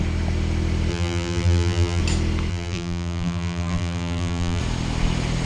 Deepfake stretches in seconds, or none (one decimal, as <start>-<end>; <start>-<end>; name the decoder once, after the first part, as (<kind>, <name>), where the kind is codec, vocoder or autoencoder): 0.9-2.0 (vocoder, BigVGAN v2); 2.5-4.6